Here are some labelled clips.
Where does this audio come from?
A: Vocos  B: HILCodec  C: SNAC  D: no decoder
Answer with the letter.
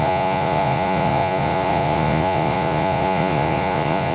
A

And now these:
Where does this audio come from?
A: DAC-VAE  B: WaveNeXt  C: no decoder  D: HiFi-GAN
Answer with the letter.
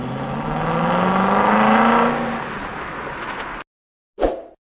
C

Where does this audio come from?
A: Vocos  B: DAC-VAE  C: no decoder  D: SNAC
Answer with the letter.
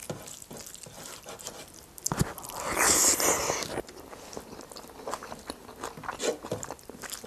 C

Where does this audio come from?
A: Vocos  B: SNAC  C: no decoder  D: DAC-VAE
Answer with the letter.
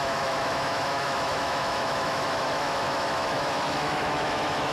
D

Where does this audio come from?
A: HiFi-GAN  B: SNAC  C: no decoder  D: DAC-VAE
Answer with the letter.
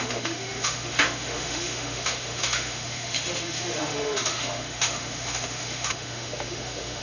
D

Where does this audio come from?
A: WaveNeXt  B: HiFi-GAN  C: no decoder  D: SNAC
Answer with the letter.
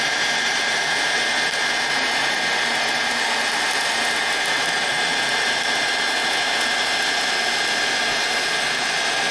C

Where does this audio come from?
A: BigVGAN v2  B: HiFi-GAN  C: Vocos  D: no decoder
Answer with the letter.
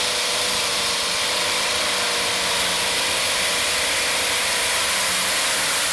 A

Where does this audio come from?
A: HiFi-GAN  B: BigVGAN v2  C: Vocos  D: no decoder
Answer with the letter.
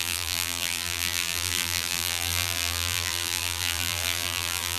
B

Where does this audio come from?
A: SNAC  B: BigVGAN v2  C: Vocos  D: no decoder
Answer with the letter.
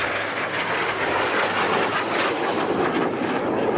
D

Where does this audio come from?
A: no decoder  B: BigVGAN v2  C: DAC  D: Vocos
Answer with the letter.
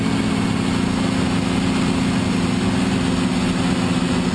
A